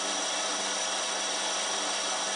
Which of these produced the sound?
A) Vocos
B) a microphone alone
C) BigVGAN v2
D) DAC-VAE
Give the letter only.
B